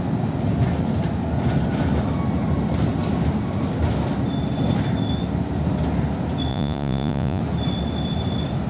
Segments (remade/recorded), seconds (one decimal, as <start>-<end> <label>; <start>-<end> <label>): 0.0-6.5 recorded; 6.5-7.4 remade; 7.4-8.7 recorded